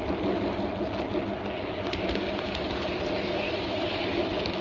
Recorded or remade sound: recorded